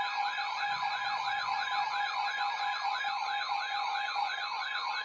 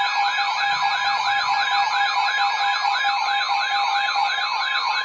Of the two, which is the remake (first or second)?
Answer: first